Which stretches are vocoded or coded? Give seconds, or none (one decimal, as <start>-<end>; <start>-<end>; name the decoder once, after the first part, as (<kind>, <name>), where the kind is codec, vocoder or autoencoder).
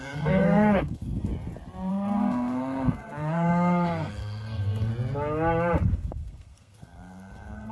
0.0-1.3 (codec, SNAC); 1.9-4.9; 5.9-7.7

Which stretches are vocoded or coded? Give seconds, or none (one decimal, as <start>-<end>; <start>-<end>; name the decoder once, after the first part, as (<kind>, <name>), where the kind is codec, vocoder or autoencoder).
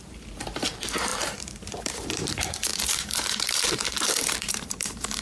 0.0-5.2 (vocoder, BigVGAN v2)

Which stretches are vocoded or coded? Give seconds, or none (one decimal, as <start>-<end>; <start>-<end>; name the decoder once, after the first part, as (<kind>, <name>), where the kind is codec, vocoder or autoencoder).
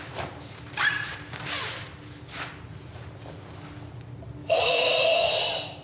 4.4-5.3 (codec, DAC)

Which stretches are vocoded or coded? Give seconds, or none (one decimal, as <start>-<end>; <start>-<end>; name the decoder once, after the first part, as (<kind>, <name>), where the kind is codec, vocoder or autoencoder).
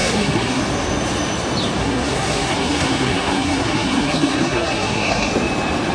0.0-0.6 (codec, SNAC); 1.8-5.3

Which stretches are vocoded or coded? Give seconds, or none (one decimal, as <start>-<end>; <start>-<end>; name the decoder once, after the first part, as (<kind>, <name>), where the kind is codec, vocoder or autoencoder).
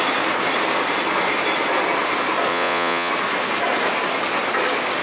2.5-3.1 (vocoder, Vocos)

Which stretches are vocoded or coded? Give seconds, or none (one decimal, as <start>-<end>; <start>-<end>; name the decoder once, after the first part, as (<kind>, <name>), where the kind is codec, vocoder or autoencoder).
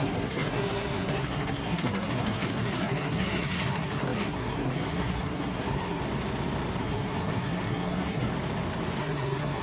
0.0-6.0 (codec, SNAC); 6.8-8.3; 9.0-9.6